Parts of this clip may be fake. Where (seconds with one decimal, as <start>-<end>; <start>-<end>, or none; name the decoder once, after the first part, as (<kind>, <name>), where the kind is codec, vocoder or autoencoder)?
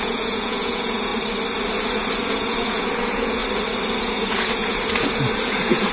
0.0-1.1 (vocoder, Vocos); 2.3-3.4; 4.0-5.9